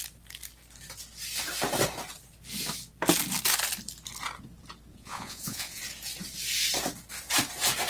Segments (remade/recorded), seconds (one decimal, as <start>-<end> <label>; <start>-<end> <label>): 0.0-4.9 recorded; 4.9-5.8 remade; 5.8-7.9 recorded